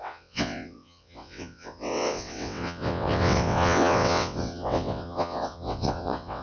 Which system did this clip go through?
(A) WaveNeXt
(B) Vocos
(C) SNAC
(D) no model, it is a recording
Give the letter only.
A